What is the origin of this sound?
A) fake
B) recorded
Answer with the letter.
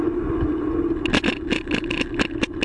B